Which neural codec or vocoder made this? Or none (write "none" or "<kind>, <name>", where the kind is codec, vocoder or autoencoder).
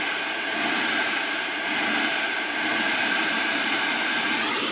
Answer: vocoder, BigVGAN v2